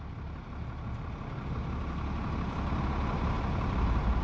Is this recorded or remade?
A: remade